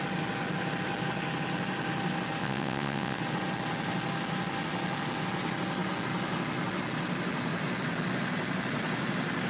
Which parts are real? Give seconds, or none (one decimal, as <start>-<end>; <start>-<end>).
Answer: 0.0-2.4; 3.2-9.5

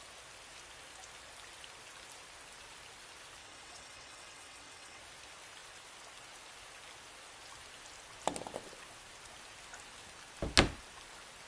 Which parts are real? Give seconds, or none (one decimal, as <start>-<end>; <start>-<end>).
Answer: 0.0-3.4; 5.0-11.5

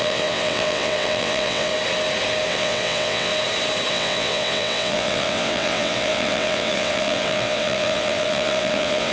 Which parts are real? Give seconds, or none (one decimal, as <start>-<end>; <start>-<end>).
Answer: 1.7-2.5; 3.3-3.9

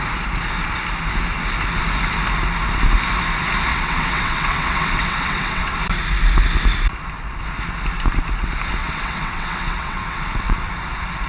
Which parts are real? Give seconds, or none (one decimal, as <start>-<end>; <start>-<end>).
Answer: 0.0-3.7; 5.7-8.8; 10.7-11.3

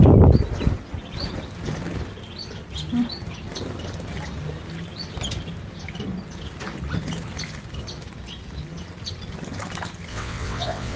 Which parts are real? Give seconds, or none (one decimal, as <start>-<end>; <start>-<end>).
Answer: 0.0-10.1

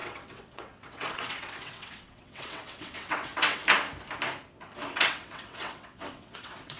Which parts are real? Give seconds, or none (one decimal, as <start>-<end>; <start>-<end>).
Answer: 3.6-4.9